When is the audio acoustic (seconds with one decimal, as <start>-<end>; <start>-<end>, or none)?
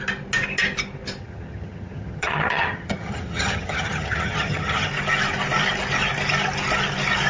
0.0-1.2; 4.9-7.3